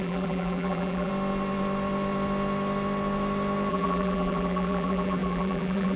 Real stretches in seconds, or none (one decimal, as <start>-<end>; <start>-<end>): 1.1-3.7